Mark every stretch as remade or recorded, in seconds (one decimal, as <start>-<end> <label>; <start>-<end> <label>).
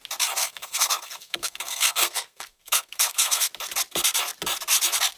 0.0-0.4 recorded; 0.4-3.5 remade; 3.5-5.2 recorded